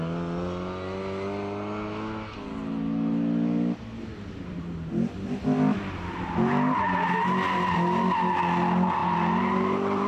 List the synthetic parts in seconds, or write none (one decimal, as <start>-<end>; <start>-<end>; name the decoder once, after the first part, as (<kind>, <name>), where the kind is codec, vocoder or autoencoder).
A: 9.0-10.1 (vocoder, BigVGAN v2)